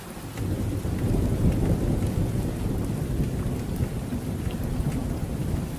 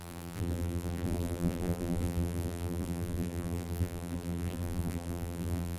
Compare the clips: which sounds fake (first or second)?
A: second